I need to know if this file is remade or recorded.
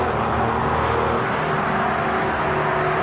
recorded